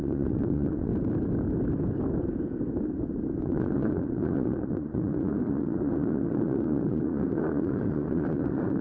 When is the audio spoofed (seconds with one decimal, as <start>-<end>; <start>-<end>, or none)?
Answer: 0.0-0.9; 3.4-8.8